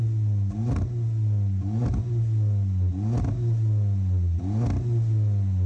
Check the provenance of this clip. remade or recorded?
recorded